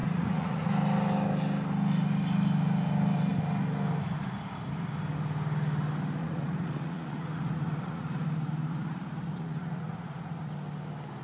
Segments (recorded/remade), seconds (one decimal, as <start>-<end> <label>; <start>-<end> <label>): 0.0-0.7 remade; 0.7-6.2 recorded; 6.2-10.5 remade; 10.5-11.2 recorded